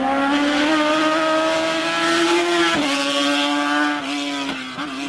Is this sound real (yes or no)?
yes